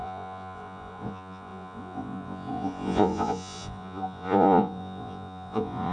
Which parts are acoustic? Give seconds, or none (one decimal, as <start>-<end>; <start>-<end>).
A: none